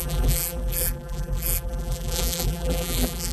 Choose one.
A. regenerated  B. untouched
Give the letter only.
A